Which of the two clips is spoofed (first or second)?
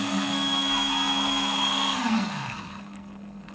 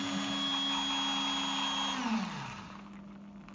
first